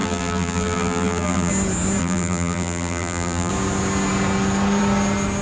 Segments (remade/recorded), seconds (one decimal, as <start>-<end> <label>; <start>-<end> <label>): 0.0-1.5 remade; 1.5-2.0 recorded; 2.0-3.5 remade; 3.5-5.4 recorded